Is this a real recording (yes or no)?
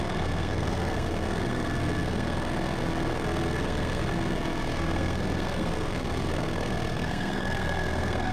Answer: no